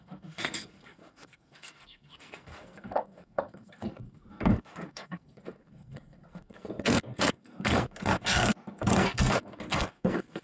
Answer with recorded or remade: remade